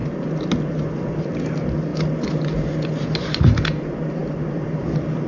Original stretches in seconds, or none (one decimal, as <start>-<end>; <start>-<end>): 0.0-5.3